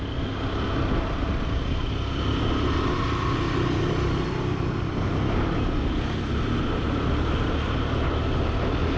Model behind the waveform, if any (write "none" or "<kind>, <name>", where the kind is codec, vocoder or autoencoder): none